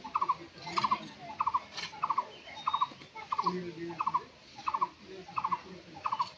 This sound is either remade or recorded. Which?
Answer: recorded